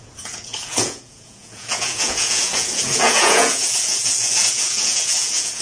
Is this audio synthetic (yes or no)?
yes